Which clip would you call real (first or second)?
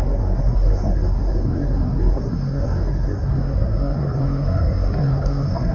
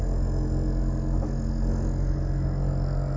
second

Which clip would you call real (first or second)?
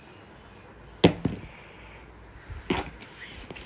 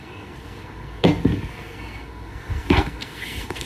first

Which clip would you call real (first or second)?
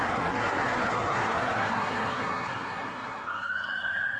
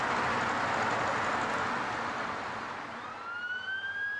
second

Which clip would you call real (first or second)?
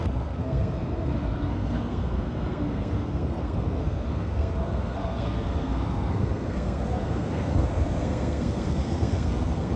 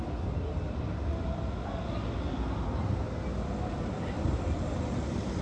second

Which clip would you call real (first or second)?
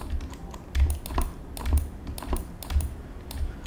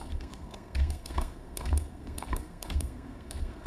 first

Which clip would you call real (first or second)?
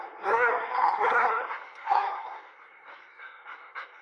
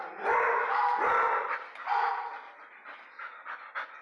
second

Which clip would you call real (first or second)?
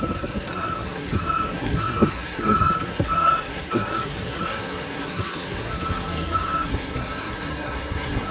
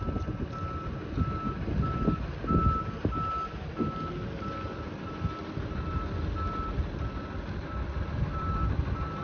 second